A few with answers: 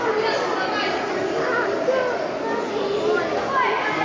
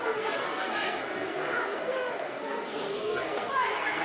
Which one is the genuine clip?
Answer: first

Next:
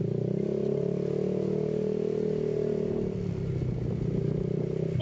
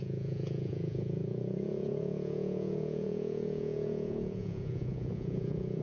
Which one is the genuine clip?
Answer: first